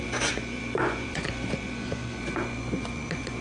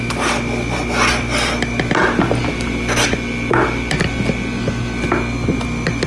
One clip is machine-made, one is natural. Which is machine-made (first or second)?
first